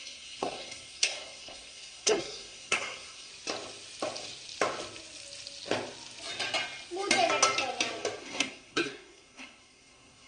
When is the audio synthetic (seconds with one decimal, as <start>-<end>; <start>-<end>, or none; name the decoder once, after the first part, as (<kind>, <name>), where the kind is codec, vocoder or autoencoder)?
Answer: 0.0-3.3 (codec, SNAC); 8.2-10.3